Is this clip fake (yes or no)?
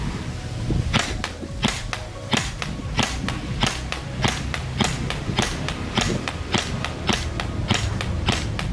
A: no